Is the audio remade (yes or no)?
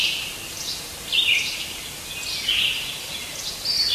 no